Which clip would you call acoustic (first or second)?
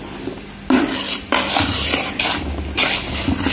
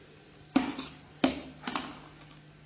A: second